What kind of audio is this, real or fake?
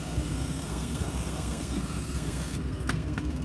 fake